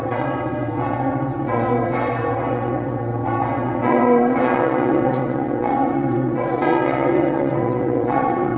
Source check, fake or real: fake